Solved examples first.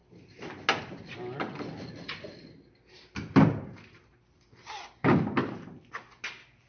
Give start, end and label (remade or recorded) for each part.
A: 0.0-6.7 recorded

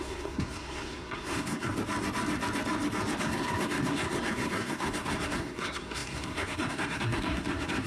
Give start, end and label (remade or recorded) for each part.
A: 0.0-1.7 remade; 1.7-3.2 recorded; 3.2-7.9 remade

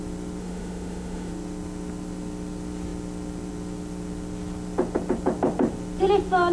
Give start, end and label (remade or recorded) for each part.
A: 0.0-0.4 recorded; 0.4-1.3 remade; 1.3-6.5 recorded

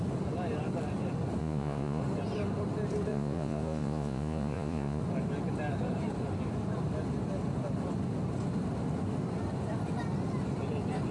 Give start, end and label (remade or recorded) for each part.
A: 0.0-1.4 recorded; 1.4-2.0 remade; 2.0-3.1 recorded; 3.1-5.0 remade; 5.0-11.1 recorded

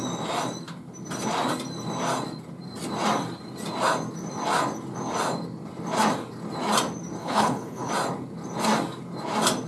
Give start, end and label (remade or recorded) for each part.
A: 0.0-7.2 recorded; 7.2-7.9 remade; 7.9-9.7 recorded